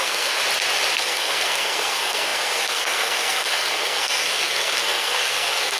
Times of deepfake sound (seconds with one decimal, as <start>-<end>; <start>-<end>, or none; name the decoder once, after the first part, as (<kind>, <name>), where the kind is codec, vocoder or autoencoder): 0.0-0.4 (codec, SNAC); 1.0-5.8